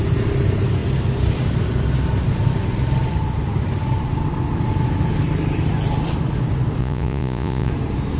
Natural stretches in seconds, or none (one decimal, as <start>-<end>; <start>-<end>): 0.0-6.8; 7.7-8.2